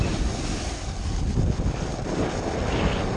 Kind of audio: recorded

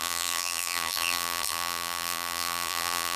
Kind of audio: remade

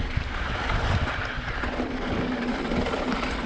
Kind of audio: remade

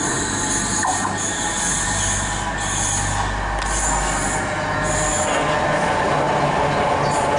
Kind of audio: recorded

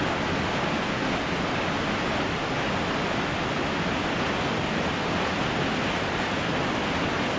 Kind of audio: recorded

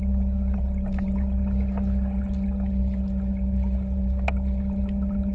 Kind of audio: recorded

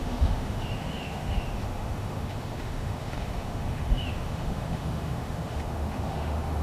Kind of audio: remade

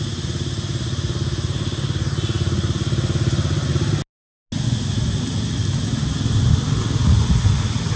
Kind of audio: recorded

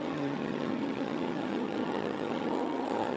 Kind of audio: remade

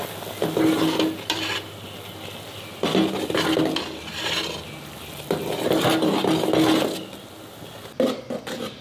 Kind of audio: recorded